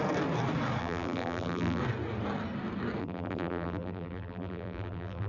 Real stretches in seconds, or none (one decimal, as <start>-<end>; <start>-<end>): 0.0-0.8; 1.8-3.0